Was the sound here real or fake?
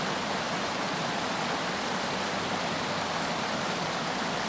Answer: real